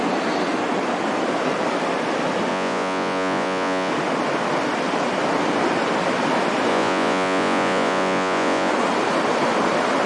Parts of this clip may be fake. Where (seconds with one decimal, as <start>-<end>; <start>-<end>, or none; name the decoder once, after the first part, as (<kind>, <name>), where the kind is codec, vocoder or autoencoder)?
2.5-3.9 (vocoder, Vocos); 6.7-8.7